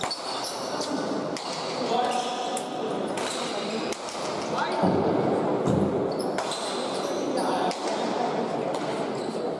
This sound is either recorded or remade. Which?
recorded